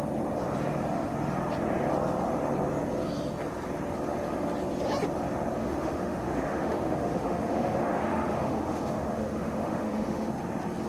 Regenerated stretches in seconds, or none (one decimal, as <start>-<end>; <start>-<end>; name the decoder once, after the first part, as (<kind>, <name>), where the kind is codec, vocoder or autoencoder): 5.6-10.3 (autoencoder, DAC-VAE)